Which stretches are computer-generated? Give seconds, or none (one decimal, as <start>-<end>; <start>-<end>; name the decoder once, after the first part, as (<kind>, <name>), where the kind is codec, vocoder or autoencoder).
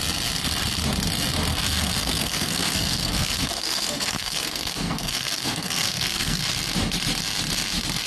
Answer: 1.5-6.4 (codec, SNAC)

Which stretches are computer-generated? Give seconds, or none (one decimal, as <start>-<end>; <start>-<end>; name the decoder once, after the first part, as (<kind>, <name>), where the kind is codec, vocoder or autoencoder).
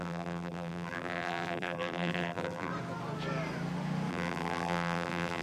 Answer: 0.0-2.7 (vocoder, BigVGAN v2); 4.1-5.4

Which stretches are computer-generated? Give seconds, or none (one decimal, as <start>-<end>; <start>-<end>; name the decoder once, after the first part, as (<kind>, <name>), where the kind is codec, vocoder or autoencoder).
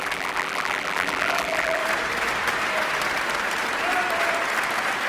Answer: 0.0-1.8 (vocoder, BigVGAN v2)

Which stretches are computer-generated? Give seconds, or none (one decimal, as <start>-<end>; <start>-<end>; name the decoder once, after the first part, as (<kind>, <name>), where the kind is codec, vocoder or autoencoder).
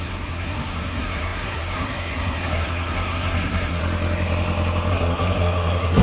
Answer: 0.0-3.8 (codec, SNAC); 4.9-6.0